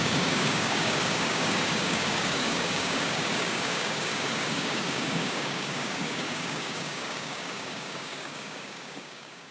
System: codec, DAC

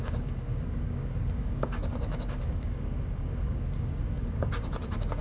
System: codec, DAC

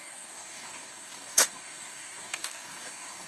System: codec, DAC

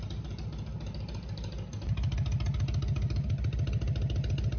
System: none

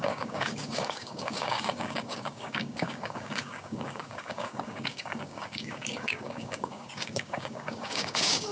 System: codec, DAC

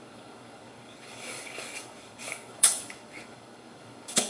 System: codec, DAC